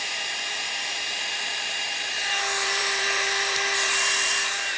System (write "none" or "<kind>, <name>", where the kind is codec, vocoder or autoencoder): vocoder, BigVGAN v2